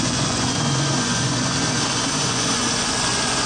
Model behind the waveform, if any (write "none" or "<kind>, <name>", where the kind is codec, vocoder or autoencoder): vocoder, Vocos